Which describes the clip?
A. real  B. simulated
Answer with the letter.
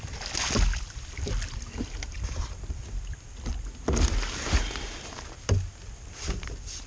A